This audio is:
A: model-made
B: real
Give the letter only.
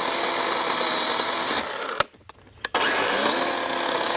B